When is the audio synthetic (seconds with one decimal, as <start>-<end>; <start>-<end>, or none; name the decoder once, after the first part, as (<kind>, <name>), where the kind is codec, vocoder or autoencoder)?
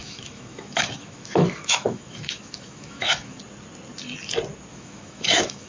0.0-3.4 (autoencoder, DAC-VAE); 4.7-5.7